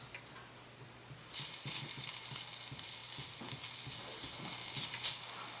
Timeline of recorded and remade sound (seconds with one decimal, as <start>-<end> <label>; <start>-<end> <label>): 0.0-5.6 recorded